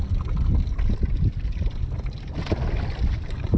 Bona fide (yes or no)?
yes